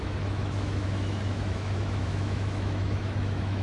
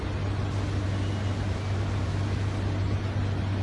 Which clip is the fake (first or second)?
first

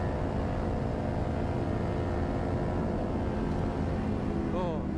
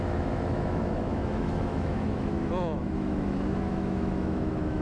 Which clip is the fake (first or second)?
second